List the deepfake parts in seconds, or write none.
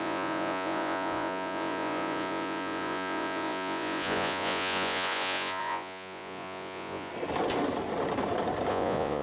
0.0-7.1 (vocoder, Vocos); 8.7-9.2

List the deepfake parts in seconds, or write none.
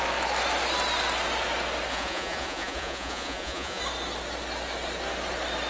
1.9-3.8 (vocoder, Vocos)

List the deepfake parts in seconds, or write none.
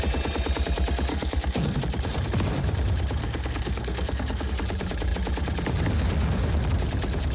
1.1-1.8 (codec, SNAC); 3.2-4.5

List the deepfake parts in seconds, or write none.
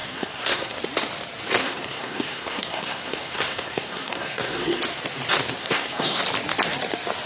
0.0-0.8 (codec, SNAC); 1.6-4.8; 5.6-6.2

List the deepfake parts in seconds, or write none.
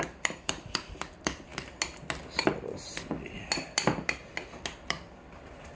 0.0-1.5 (vocoder, BigVGAN v2); 4.9-5.7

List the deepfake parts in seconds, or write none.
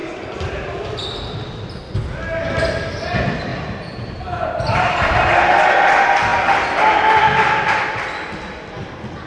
0.0-1.3 (vocoder, BigVGAN v2); 3.5-4.9